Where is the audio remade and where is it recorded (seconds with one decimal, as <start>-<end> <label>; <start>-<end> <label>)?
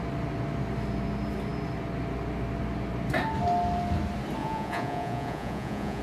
0.0-4.4 recorded; 4.4-6.0 remade